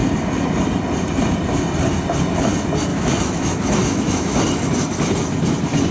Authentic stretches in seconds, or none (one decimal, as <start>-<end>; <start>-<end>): 0.0-2.9; 4.4-5.9